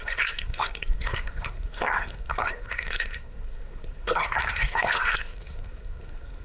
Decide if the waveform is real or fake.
fake